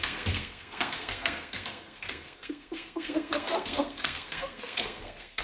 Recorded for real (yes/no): no